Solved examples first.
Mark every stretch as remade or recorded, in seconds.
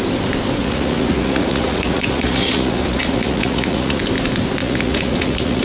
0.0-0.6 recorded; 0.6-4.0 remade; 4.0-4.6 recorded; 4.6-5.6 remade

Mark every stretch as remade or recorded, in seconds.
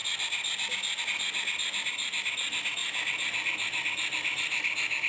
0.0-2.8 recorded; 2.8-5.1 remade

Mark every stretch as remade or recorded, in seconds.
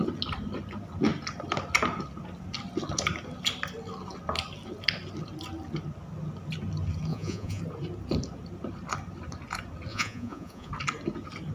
0.0-7.1 recorded; 7.1-7.6 remade; 7.6-9.9 recorded; 9.9-10.7 remade; 10.7-11.5 recorded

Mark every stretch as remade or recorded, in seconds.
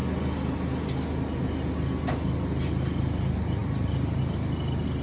0.0-3.6 recorded; 3.6-4.2 remade; 4.2-5.0 recorded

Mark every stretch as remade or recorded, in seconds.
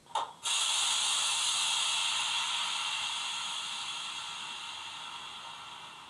0.0-6.1 recorded